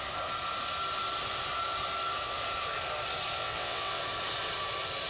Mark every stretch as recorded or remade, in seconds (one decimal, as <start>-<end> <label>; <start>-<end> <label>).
0.0-3.4 recorded; 3.4-4.0 remade; 4.0-5.1 recorded